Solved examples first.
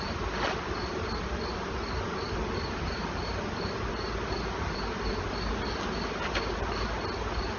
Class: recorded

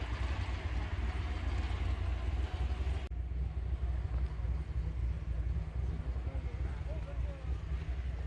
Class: recorded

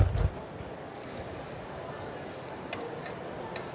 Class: recorded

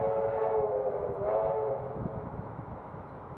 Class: remade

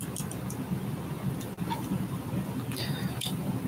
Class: remade